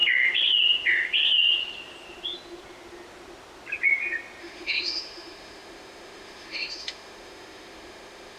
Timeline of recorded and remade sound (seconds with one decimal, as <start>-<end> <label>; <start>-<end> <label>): 0.0-4.4 recorded; 4.4-8.4 remade